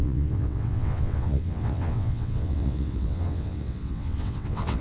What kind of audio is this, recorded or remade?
remade